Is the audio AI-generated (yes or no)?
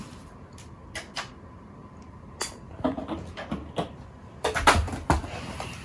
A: no